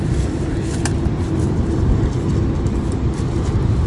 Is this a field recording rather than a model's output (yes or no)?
yes